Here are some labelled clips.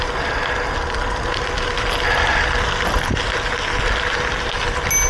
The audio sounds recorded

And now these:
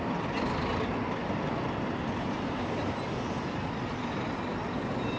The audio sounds recorded